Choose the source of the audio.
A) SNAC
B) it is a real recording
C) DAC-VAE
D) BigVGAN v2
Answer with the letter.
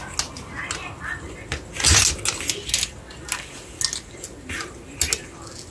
B